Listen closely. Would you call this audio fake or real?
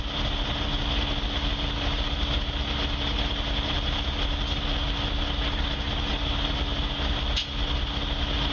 real